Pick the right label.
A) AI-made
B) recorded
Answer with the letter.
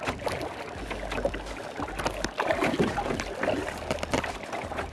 B